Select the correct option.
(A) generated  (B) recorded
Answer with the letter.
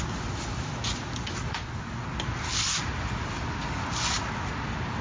B